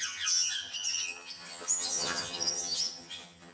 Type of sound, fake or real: fake